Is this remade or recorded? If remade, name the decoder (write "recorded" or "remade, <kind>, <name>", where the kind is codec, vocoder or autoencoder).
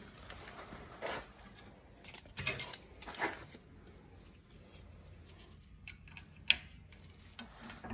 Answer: recorded